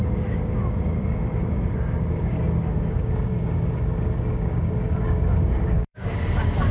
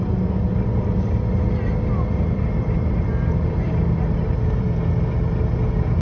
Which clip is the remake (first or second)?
first